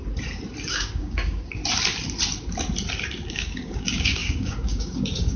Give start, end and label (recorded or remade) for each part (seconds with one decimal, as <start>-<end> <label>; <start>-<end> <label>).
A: 0.0-0.7 recorded; 0.7-1.6 remade; 1.6-3.3 recorded; 3.3-5.4 remade